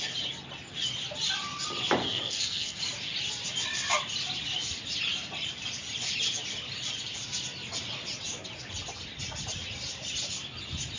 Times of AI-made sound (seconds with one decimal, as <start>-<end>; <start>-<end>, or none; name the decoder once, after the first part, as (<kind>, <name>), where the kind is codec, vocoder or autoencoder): 2.0-2.8 (codec, SNAC)